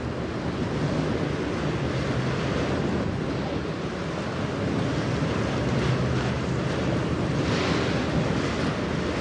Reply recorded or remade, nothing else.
recorded